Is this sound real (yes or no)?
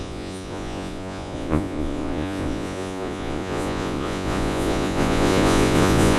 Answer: no